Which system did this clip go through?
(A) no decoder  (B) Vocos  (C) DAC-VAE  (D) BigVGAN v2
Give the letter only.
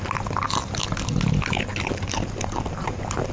A